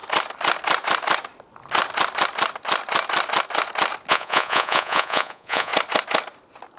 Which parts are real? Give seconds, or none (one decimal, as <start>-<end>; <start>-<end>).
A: 0.0-4.1; 5.7-6.8